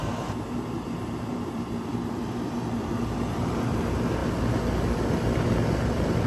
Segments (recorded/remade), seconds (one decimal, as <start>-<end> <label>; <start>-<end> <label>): 0.0-4.2 remade; 4.2-5.7 recorded; 5.7-6.3 remade